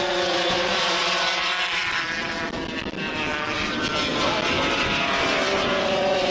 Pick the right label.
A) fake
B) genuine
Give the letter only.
A